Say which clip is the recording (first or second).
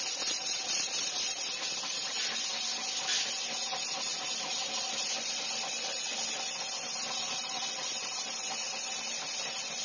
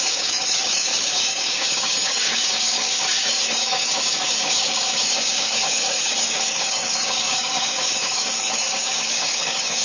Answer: first